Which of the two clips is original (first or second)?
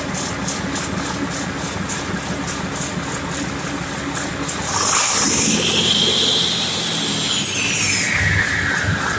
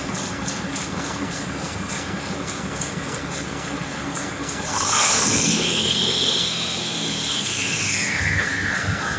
first